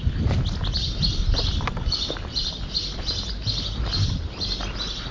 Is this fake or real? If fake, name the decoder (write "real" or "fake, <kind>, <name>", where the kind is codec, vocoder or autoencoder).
real